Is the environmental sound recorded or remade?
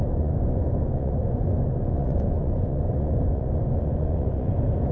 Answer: remade